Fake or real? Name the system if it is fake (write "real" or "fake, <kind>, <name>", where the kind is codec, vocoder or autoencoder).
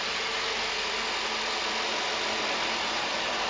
real